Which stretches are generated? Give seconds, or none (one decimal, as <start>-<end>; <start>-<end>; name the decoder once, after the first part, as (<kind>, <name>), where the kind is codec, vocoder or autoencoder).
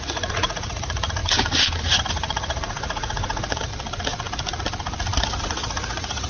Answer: 0.0-1.2 (vocoder, Vocos); 2.1-3.7; 5.4-6.3